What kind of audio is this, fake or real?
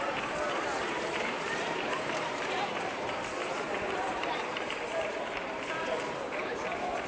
fake